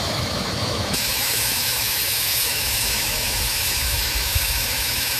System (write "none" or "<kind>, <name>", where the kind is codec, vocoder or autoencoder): autoencoder, DAC-VAE